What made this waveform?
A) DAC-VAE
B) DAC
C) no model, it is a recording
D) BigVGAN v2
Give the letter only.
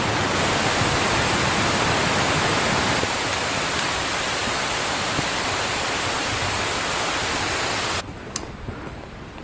D